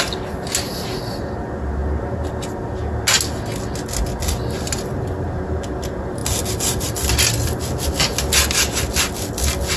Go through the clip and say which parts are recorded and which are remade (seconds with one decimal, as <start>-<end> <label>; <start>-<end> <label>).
0.0-9.8 recorded